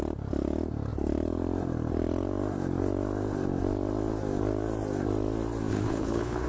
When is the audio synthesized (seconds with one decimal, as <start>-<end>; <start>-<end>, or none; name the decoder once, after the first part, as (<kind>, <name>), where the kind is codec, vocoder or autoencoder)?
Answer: 5.7-6.5 (codec, HILCodec)